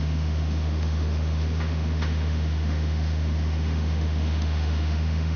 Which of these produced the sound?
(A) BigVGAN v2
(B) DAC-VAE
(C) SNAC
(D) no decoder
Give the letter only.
B